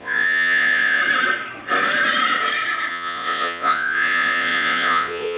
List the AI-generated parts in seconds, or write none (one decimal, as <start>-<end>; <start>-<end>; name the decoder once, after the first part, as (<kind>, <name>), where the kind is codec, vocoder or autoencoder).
0.0-1.0 (vocoder, Vocos); 2.9-5.4